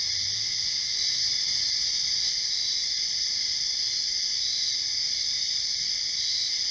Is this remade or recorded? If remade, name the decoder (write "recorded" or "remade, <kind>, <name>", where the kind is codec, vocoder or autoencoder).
recorded